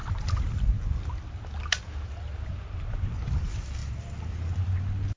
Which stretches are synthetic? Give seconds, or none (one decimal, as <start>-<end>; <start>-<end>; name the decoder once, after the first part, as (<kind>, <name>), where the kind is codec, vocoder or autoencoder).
none

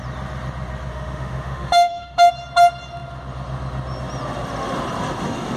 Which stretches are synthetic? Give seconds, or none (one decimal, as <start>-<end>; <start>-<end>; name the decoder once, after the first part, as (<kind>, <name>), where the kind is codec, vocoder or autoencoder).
0.9-2.3 (autoencoder, DAC-VAE)

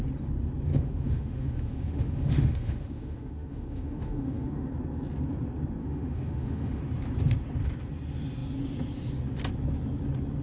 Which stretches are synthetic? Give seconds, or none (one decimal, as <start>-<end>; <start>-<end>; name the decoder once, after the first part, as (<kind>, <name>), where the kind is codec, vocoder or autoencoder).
0.7-4.7 (autoencoder, DAC-VAE); 5.8-6.8

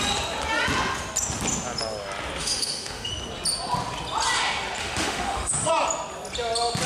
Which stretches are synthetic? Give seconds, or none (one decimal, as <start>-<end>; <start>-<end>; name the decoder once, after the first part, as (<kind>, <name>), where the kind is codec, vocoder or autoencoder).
2.4-3.1 (autoencoder, DAC-VAE); 4.8-5.7

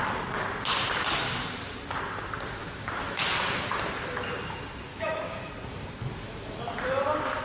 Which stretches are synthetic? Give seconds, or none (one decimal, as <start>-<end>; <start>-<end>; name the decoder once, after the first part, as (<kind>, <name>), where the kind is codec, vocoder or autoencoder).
2.6-3.2 (autoencoder, DAC-VAE); 4.9-5.5